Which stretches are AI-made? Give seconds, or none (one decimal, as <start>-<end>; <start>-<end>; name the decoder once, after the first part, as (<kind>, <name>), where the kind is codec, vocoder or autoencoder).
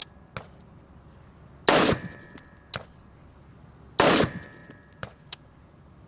4.6-5.5 (vocoder, BigVGAN v2)